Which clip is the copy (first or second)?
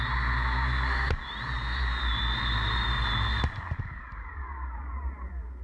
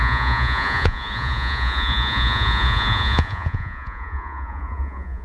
second